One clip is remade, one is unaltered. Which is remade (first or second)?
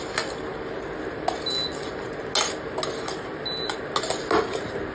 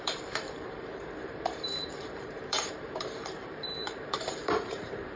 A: second